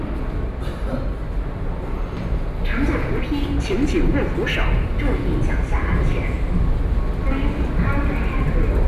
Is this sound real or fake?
real